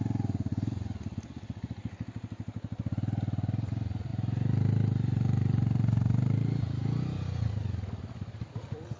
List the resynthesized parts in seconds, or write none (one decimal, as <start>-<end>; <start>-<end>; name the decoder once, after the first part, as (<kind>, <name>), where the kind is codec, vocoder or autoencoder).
4.1-6.8 (vocoder, BigVGAN v2)